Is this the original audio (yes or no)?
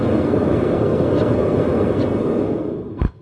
no